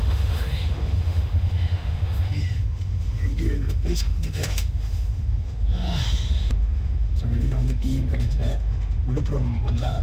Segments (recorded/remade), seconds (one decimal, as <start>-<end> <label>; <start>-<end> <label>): 0.0-10.0 remade